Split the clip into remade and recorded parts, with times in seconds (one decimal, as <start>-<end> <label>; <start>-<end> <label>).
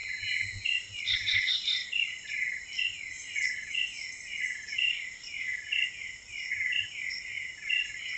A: 0.0-8.2 recorded